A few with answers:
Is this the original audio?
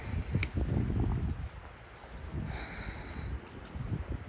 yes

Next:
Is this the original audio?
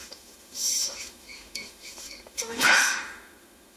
no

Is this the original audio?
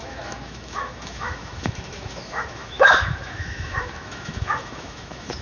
no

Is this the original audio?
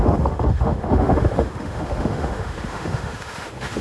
no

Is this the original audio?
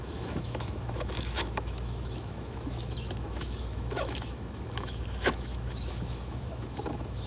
no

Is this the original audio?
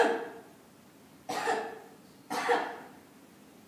yes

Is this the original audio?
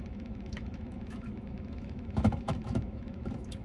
no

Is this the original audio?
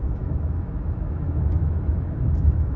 no